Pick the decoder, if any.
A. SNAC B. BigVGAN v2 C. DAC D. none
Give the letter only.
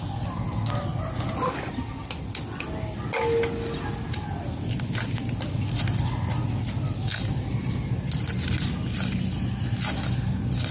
D